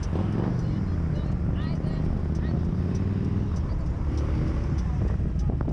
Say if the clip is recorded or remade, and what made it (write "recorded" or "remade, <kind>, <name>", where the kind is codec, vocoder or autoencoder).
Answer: recorded